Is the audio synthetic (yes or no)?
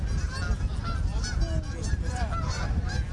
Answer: no